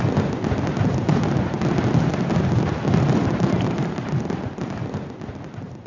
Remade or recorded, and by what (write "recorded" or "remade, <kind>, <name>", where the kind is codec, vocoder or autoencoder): recorded